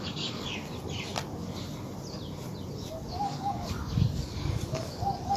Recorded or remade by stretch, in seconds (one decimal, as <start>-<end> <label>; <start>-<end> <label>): 0.0-0.6 remade; 0.6-3.1 recorded; 3.1-5.4 remade